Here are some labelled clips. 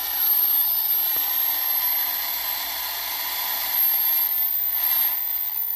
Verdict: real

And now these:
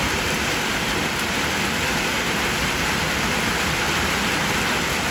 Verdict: real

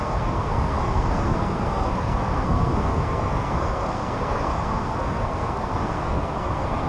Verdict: fake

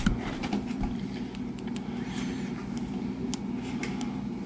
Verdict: real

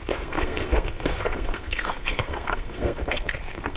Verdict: fake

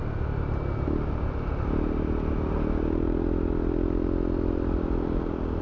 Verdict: real